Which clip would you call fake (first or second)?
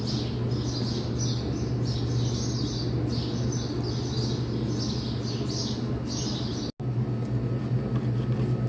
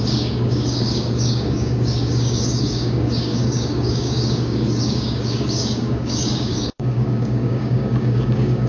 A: second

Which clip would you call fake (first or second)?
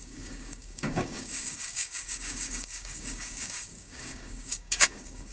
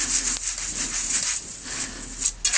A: first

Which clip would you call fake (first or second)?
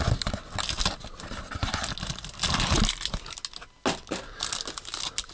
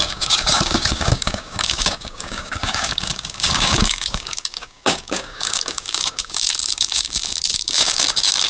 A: second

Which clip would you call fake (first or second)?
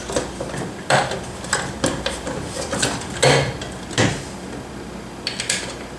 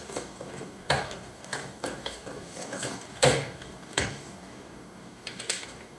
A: second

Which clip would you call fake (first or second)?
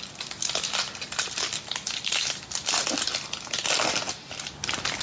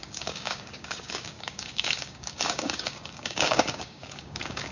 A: second